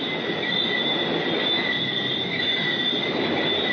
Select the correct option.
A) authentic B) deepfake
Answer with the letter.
A